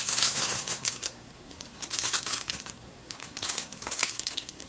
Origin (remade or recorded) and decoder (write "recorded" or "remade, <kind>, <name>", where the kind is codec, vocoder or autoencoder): remade, codec, SNAC